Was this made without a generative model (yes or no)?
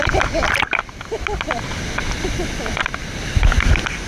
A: yes